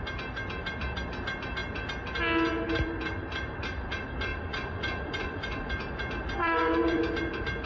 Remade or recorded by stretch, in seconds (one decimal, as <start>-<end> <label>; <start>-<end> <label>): 0.0-4.3 recorded; 4.3-5.7 remade; 5.7-6.4 recorded; 6.4-7.0 remade; 7.0-7.7 recorded